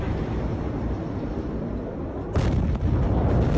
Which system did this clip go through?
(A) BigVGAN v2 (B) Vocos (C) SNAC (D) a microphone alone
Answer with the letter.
D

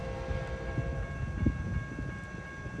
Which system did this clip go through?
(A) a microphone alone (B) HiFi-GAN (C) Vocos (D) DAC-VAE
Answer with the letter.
A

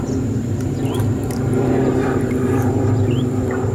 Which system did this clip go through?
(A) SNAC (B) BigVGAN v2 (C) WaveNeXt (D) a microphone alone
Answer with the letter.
B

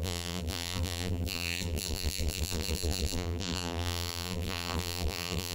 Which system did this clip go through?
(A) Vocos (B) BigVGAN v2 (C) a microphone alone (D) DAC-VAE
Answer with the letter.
B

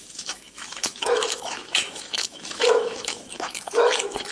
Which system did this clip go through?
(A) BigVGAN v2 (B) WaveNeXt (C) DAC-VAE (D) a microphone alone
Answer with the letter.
C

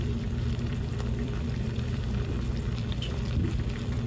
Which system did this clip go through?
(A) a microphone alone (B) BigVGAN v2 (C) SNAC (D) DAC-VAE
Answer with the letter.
B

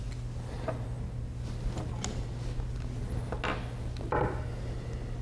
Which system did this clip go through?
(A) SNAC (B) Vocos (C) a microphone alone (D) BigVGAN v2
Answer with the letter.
C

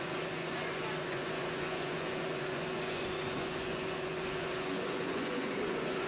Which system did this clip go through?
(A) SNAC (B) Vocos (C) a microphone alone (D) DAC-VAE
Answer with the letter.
B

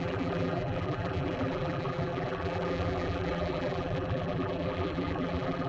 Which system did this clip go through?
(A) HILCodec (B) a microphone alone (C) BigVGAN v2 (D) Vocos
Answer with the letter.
C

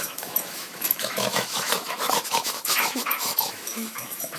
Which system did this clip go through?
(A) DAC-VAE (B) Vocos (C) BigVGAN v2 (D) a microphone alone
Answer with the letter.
A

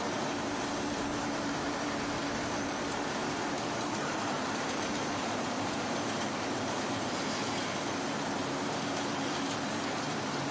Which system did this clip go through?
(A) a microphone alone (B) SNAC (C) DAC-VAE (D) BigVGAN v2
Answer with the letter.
D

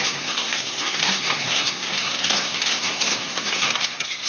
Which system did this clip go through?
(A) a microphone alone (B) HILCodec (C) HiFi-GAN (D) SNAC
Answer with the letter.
D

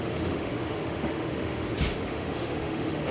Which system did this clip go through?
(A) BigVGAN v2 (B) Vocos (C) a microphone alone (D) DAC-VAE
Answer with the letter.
D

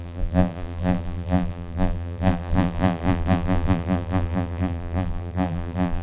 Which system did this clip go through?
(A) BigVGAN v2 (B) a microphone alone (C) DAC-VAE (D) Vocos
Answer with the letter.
A